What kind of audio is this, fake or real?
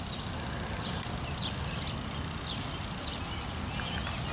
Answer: real